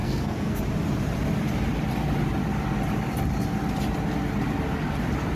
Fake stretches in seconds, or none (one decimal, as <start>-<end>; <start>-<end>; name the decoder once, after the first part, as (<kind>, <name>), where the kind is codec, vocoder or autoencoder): 0.0-0.6 (codec, SNAC)